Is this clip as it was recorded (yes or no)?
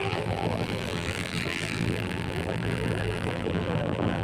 no